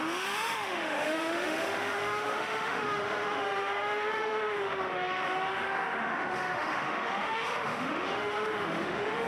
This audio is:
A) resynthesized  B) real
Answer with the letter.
A